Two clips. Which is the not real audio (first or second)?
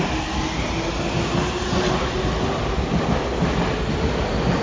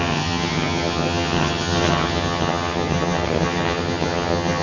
second